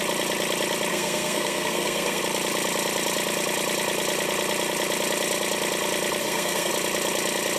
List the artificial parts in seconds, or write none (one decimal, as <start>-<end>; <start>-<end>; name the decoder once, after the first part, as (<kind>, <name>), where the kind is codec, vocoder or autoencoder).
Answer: 0.9-2.2 (codec, SNAC); 6.2-6.7